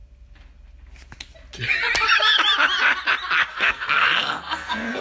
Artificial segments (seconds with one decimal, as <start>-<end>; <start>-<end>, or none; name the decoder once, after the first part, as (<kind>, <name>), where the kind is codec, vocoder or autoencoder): 3.5-5.0 (codec, SNAC)